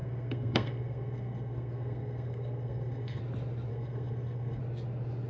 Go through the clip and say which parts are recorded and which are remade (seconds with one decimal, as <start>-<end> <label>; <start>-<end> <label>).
0.0-3.2 remade; 3.2-3.7 recorded; 3.7-4.6 remade; 4.6-5.3 recorded